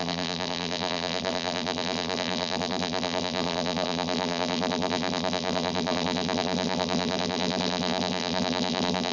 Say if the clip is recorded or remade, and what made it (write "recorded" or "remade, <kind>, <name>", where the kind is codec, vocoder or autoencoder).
remade, vocoder, BigVGAN v2